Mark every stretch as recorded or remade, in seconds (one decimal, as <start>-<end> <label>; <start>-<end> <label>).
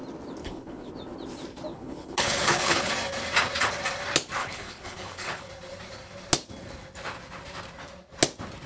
0.0-0.4 recorded; 0.4-0.9 remade; 0.9-1.7 recorded; 1.7-2.9 remade; 2.9-4.4 recorded; 4.4-5.5 remade; 5.5-8.7 recorded